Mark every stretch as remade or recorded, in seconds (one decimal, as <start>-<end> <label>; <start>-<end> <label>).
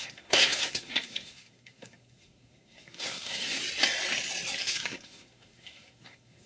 0.0-3.6 remade; 3.6-4.7 recorded; 4.7-6.5 remade